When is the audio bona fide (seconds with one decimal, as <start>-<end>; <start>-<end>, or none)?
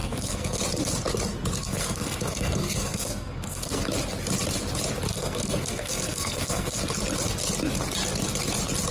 0.6-1.6; 3.8-5.1; 6.8-8.9